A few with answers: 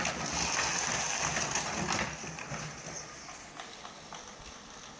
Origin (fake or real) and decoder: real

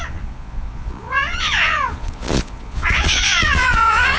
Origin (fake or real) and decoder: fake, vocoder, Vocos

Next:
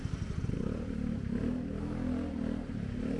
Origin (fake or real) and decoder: real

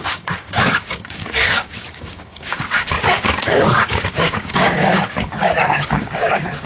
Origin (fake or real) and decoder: fake, codec, DAC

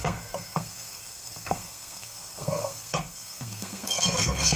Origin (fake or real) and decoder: fake, codec, SNAC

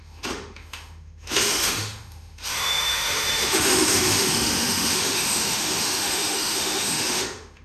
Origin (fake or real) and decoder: fake, autoencoder, DAC-VAE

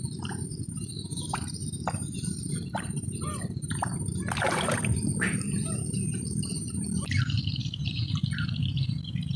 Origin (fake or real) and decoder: fake, vocoder, BigVGAN v2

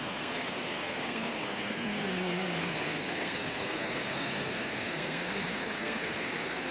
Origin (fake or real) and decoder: fake, codec, SNAC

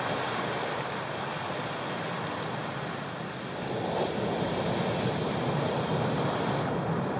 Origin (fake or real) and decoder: real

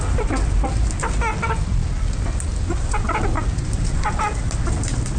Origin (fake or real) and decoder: real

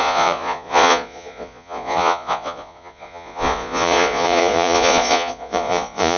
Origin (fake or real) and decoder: fake, vocoder, Vocos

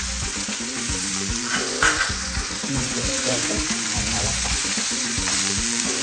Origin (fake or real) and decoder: fake, vocoder, Vocos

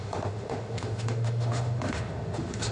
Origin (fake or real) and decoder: fake, autoencoder, DAC-VAE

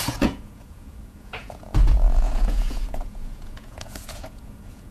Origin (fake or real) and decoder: fake, vocoder, Vocos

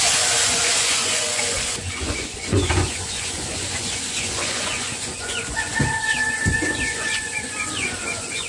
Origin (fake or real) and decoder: fake, vocoder, Vocos